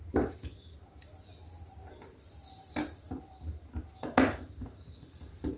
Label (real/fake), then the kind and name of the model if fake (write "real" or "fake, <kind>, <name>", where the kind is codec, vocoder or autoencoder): real